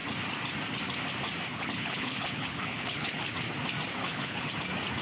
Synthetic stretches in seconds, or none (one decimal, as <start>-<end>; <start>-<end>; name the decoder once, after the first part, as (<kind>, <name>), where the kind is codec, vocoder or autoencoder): 1.5-3.3 (codec, HILCodec); 4.0-4.5